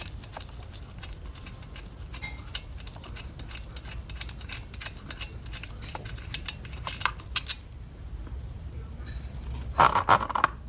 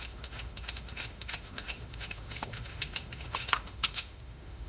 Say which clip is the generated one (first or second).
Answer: second